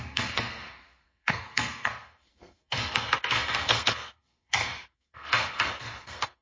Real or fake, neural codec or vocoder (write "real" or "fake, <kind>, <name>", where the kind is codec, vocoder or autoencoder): fake, codec, SNAC